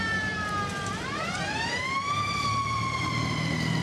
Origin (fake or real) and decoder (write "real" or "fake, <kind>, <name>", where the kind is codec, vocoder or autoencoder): fake, vocoder, BigVGAN v2